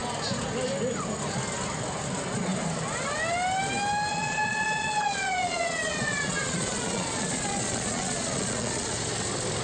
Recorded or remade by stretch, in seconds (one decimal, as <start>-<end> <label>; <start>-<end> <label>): 0.0-4.1 recorded; 4.1-8.9 remade; 8.9-9.6 recorded